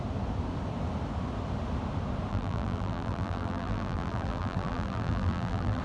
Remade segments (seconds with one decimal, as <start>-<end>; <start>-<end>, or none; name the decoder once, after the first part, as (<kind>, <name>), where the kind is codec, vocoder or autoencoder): 2.3-5.8 (vocoder, BigVGAN v2)